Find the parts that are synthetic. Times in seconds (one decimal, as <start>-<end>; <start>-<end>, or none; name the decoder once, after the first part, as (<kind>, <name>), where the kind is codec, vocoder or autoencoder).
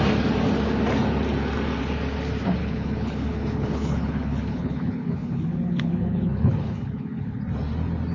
2.6-7.4 (codec, HILCodec)